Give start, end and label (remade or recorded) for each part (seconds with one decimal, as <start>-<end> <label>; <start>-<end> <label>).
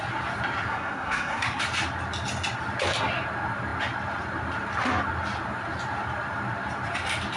0.0-0.7 recorded; 0.7-1.6 remade; 1.6-7.4 recorded